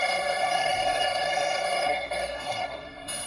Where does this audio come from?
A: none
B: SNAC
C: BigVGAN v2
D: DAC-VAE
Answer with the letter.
B